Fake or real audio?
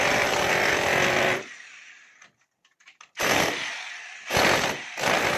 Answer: real